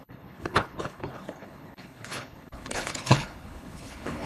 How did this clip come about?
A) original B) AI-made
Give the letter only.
B